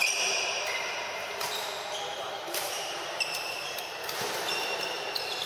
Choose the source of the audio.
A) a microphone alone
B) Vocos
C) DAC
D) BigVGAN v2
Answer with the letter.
D